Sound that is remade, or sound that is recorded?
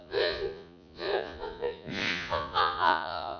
remade